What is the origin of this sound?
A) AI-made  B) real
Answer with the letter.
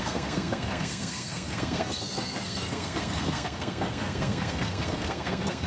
A